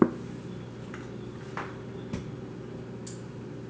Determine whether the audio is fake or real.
real